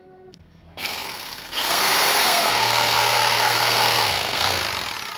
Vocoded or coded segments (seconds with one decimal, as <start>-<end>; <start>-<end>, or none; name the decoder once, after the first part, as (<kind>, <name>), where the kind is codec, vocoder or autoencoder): 0.0-4.6 (codec, SNAC)

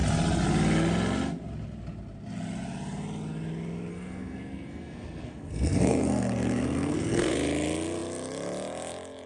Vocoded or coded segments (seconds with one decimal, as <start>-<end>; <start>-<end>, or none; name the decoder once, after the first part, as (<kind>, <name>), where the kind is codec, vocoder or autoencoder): 3.9-7.3 (codec, SNAC)

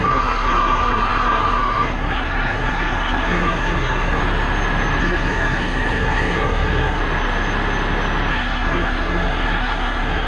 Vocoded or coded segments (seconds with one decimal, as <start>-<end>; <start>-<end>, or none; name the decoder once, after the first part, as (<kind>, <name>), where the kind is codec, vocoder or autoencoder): 0.0-4.2 (codec, SNAC); 5.0-7.0; 8.3-10.3

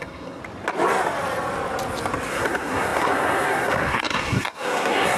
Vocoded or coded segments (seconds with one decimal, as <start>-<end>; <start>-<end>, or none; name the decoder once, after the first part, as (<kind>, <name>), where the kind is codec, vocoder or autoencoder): 0.0-0.4 (codec, SNAC); 2.3-5.2